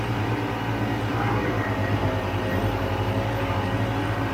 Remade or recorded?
remade